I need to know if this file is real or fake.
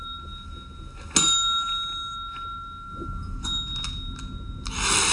real